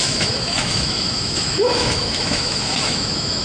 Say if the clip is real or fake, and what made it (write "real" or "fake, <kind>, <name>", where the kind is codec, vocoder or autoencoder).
fake, autoencoder, DAC-VAE